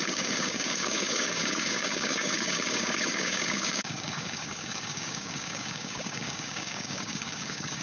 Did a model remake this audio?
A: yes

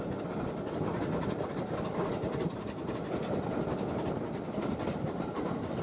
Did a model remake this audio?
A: no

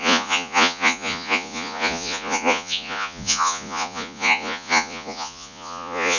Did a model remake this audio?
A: yes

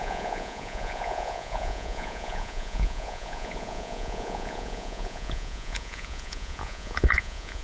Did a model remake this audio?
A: yes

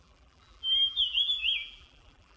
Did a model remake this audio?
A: yes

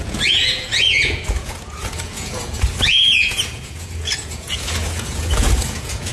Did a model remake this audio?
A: yes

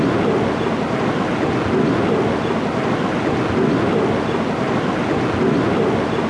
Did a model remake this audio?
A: no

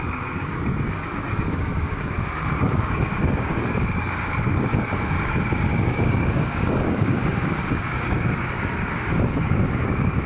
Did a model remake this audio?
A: yes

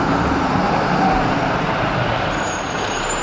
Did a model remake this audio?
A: yes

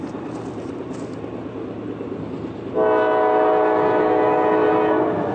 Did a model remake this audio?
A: no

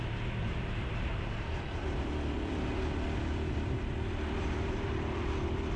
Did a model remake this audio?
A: yes